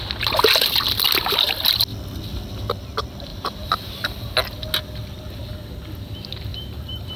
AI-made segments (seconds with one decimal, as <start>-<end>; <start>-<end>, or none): 3.3-4.3; 6.5-7.2